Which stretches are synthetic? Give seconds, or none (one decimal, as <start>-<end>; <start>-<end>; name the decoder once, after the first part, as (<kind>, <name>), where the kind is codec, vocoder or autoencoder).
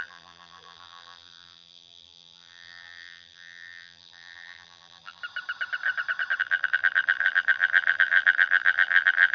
0.0-5.2 (vocoder, BigVGAN v2); 6.4-9.3